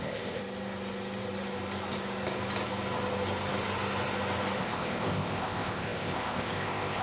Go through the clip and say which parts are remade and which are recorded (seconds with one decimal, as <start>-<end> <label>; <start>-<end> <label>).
0.0-0.4 remade; 0.4-4.6 recorded; 4.6-7.0 remade